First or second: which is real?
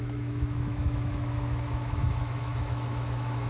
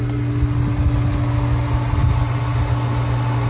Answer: second